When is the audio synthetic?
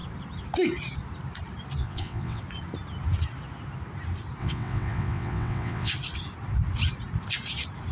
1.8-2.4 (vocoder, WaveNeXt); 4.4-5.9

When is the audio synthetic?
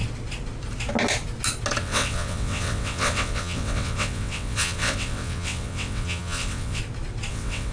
1.8-6.8 (vocoder, WaveNeXt); 7.3-7.7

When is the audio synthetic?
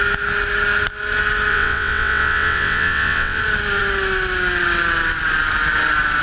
1.5-3.4 (vocoder, WaveNeXt)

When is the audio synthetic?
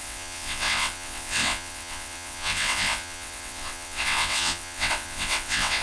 0.0-5.8 (vocoder, WaveNeXt)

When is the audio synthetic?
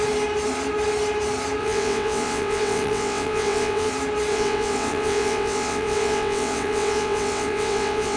1.6-3.9 (vocoder, WaveNeXt); 4.3-8.2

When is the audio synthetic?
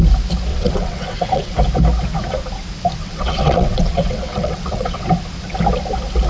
0.5-1.5 (vocoder, WaveNeXt); 3.0-5.0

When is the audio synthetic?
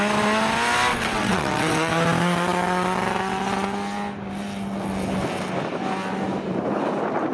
0.9-1.9 (vocoder, WaveNeXt)